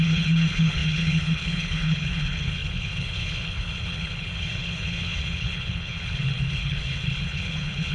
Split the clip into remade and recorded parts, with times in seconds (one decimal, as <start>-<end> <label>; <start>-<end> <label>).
0.0-7.9 remade